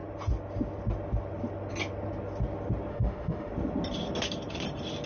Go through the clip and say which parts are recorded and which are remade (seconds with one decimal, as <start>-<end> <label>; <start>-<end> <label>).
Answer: 0.0-2.9 recorded; 2.9-3.5 remade; 3.5-5.1 recorded

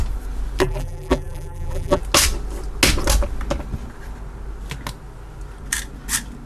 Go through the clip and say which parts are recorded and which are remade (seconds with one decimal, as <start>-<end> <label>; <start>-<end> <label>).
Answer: 0.0-0.6 recorded; 0.6-2.0 remade; 2.0-6.5 recorded

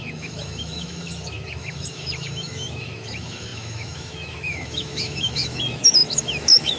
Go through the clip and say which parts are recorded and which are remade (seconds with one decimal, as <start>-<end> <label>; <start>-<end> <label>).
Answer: 0.0-6.8 remade

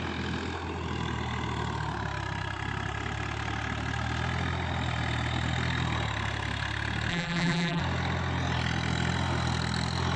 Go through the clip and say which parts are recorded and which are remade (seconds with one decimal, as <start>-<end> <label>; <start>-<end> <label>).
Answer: 0.0-7.1 recorded; 7.1-7.8 remade; 7.8-10.2 recorded

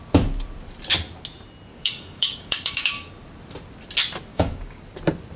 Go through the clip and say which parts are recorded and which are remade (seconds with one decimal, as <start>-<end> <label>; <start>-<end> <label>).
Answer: 0.0-1.7 recorded; 1.7-3.1 remade; 3.1-4.3 recorded; 4.3-4.8 remade; 4.8-5.4 recorded

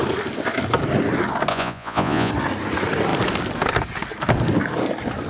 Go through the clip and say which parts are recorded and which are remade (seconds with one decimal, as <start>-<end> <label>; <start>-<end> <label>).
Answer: 0.0-1.5 recorded; 1.5-2.3 remade; 2.3-5.3 recorded

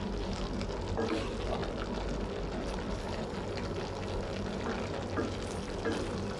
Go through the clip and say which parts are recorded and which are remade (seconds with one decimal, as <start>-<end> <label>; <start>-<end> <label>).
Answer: 0.0-6.4 recorded